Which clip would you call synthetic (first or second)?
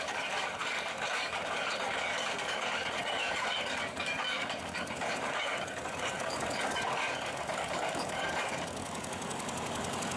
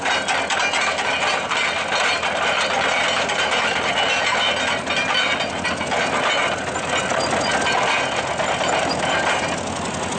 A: first